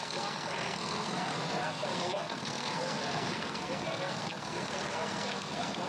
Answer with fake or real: fake